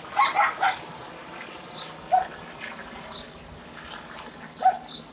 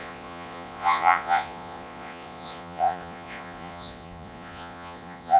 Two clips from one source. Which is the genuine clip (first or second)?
first